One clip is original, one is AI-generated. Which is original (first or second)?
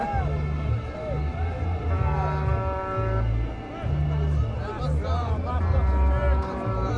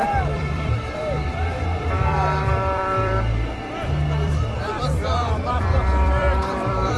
first